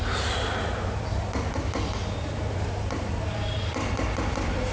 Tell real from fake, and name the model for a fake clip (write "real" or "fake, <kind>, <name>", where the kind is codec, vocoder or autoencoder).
fake, vocoder, BigVGAN v2